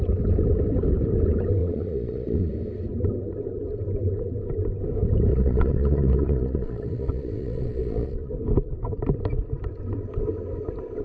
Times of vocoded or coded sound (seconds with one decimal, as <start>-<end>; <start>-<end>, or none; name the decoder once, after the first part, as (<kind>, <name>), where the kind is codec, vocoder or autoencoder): 1.6-2.5 (vocoder, Vocos); 5.3-8.3